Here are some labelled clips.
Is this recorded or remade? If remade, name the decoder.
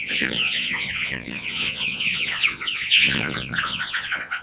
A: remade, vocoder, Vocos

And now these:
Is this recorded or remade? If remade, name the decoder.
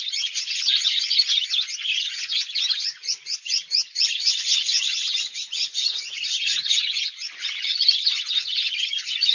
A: remade, vocoder, Vocos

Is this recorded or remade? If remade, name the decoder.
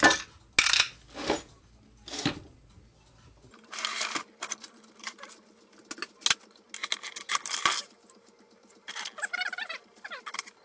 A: recorded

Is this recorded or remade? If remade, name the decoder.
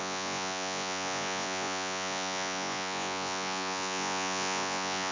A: remade, vocoder, Vocos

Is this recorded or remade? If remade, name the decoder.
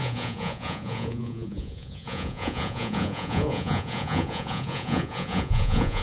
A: remade, vocoder, Vocos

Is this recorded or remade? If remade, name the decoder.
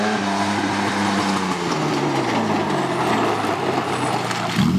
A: recorded